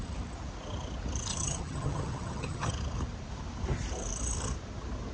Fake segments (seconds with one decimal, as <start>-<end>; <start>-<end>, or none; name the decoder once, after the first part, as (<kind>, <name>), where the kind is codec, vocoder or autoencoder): 1.3-2.7 (vocoder, HiFi-GAN)